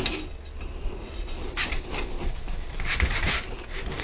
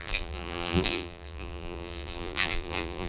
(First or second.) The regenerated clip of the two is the second